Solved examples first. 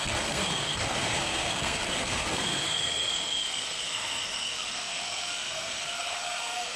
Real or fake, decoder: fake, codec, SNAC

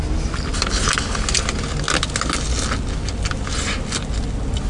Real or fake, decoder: real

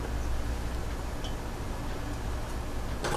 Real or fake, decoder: real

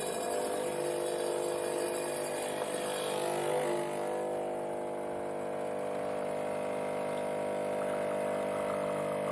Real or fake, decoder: real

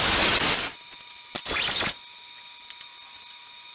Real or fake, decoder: real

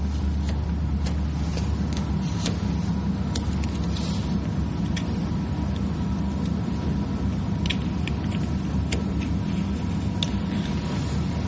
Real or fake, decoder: real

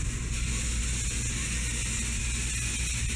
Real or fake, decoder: real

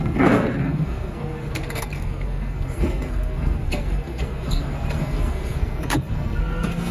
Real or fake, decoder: fake, codec, SNAC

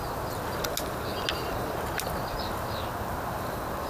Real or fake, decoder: real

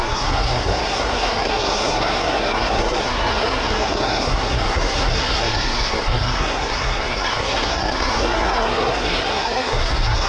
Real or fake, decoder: fake, codec, SNAC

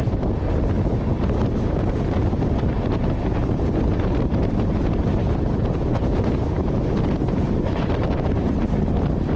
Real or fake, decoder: fake, vocoder, BigVGAN v2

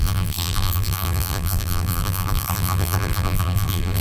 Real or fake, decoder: fake, vocoder, BigVGAN v2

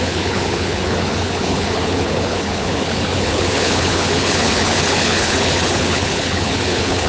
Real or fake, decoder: fake, codec, HILCodec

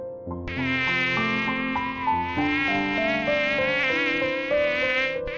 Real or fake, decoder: real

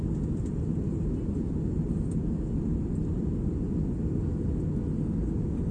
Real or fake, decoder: real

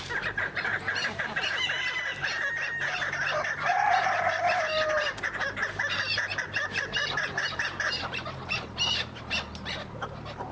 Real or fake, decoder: fake, vocoder, BigVGAN v2